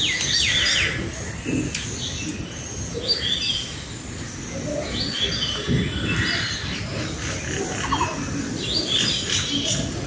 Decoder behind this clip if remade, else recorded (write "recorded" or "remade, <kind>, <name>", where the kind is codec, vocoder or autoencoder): recorded